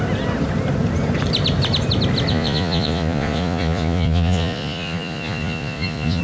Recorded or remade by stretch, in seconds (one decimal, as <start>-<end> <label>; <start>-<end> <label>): 0.0-2.3 recorded; 2.3-6.2 remade